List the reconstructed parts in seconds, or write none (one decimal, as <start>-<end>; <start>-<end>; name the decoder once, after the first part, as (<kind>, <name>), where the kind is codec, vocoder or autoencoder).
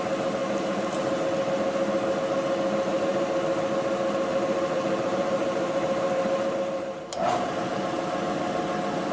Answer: 0.4-1.3 (vocoder, BigVGAN v2); 2.9-3.4; 4.3-7.7